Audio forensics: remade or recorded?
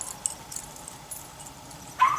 recorded